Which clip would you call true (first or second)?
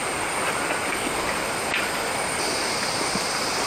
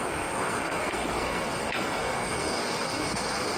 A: first